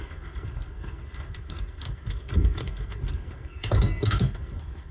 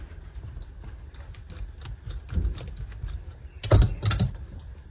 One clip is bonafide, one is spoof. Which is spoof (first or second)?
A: first